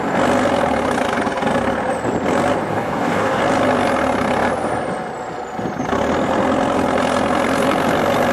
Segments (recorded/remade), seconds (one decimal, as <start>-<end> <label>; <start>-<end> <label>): 0.0-2.7 recorded; 2.7-3.4 remade; 3.4-8.3 recorded